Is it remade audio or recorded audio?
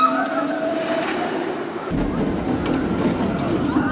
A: recorded